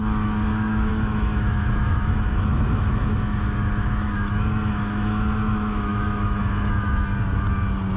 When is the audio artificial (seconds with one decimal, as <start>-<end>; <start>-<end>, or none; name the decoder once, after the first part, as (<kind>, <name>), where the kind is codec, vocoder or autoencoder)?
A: 0.0-7.1 (autoencoder, DAC-VAE)